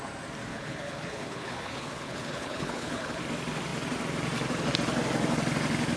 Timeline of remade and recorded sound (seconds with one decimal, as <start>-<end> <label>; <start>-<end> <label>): 0.0-0.5 recorded; 0.5-3.2 remade; 3.2-6.0 recorded